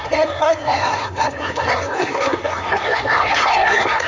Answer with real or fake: fake